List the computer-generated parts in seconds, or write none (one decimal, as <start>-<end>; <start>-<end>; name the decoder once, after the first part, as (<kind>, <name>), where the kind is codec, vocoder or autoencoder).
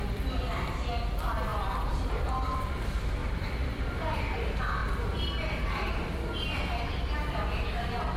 1.5-2.8 (vocoder, BigVGAN v2); 3.2-4.2; 4.8-6.6